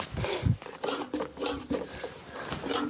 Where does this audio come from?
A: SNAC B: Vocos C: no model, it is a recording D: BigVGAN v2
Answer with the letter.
C